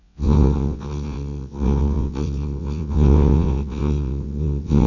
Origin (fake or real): fake